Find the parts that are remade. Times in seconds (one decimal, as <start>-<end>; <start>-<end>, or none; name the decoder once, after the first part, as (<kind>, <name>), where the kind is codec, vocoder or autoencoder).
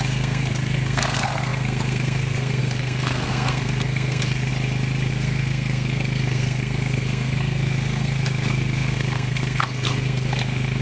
0.0-4.5 (codec, SNAC); 5.1-10.8